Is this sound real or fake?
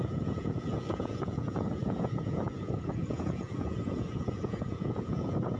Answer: fake